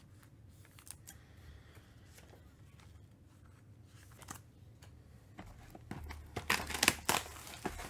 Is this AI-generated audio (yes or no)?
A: no